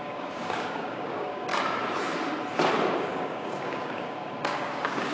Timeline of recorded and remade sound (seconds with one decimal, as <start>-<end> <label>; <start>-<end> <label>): 0.0-1.5 remade; 1.5-3.0 recorded; 3.0-5.1 remade